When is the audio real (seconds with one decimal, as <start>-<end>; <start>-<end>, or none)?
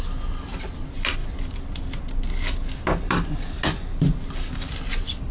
0.0-5.3